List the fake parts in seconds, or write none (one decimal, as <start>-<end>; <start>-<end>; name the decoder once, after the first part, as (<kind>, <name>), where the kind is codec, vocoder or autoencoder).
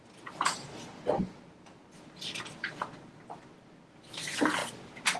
0.0-0.7 (vocoder, BigVGAN v2); 1.2-1.8; 4.0-4.6